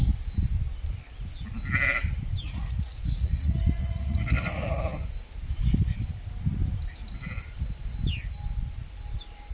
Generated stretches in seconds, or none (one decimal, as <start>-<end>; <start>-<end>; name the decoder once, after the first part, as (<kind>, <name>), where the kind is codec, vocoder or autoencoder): 2.4-4.8 (vocoder, Vocos)